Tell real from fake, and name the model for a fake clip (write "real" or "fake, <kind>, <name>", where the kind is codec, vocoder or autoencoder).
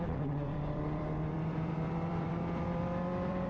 fake, vocoder, BigVGAN v2